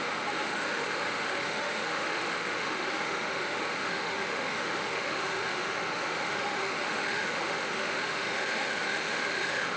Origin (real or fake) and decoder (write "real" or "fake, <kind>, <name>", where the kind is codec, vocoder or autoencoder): fake, autoencoder, DAC-VAE